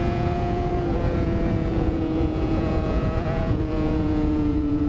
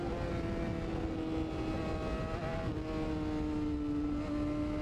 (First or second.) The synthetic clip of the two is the first